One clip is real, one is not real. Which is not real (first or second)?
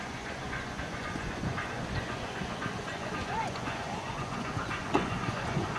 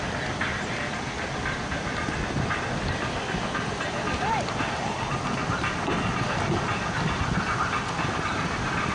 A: first